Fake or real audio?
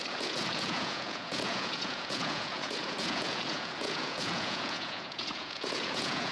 fake